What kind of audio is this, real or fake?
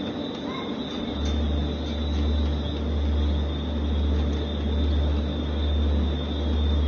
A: real